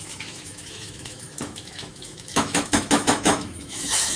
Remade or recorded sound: remade